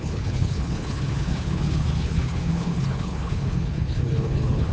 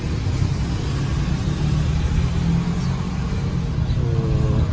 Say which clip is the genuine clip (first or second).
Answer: second